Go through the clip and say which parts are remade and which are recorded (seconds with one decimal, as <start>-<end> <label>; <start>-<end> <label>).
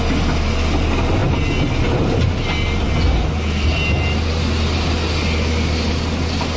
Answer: 0.0-6.6 recorded